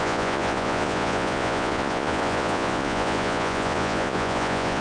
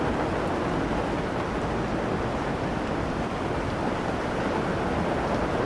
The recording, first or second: second